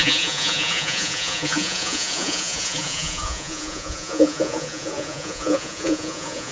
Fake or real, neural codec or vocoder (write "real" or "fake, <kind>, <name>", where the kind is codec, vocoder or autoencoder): fake, vocoder, Vocos